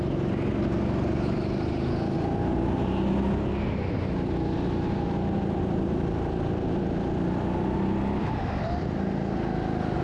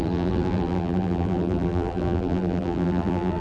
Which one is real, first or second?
first